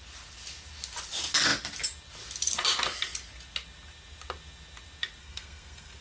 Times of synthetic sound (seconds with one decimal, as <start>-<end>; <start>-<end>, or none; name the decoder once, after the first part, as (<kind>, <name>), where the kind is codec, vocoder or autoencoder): 5.2-6.0 (codec, SNAC)